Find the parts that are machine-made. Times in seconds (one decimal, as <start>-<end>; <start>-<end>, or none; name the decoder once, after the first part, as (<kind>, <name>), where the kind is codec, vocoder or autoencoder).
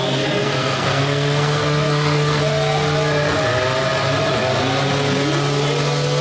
0.0-2.4 (codec, SNAC)